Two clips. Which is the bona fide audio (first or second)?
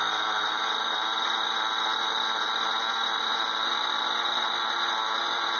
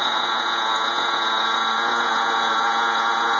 first